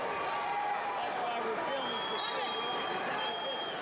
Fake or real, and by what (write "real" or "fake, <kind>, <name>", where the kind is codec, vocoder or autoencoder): real